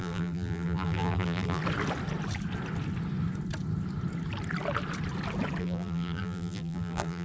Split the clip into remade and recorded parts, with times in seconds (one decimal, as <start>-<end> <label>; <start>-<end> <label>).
0.0-1.6 remade; 1.6-5.6 recorded; 5.6-7.2 remade